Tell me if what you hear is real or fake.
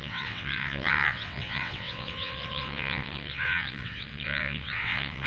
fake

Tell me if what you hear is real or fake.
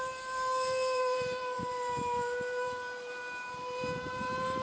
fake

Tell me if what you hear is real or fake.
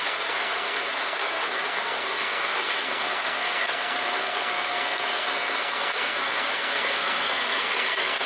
fake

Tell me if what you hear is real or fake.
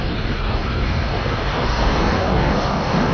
fake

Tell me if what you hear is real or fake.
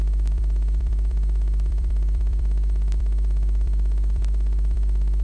fake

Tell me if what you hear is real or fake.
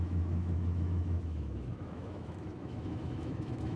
fake